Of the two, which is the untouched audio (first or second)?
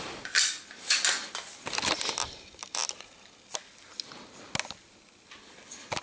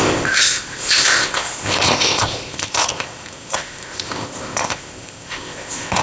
first